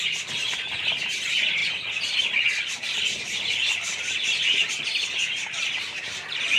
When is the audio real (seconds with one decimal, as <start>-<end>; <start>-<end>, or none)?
0.0-6.6